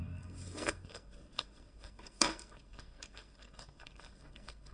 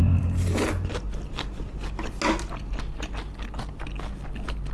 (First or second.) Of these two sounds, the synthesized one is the first